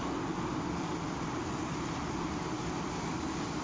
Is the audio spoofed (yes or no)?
no